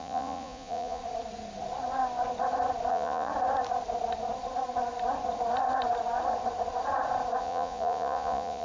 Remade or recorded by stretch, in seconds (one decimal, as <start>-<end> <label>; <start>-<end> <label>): 0.0-1.0 remade; 1.0-2.9 recorded; 2.9-3.3 remade; 3.3-7.4 recorded; 7.4-8.6 remade